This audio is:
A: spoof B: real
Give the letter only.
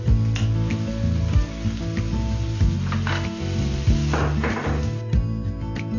B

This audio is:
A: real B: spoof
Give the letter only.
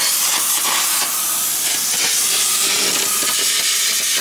A